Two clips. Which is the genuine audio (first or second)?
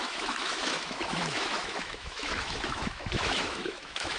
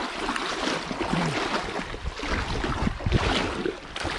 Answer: second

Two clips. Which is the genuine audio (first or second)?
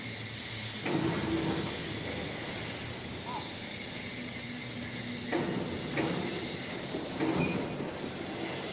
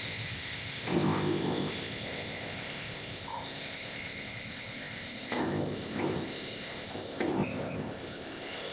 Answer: first